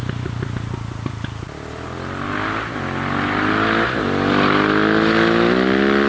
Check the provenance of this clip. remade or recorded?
recorded